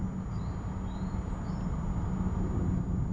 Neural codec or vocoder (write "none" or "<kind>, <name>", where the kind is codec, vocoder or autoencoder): none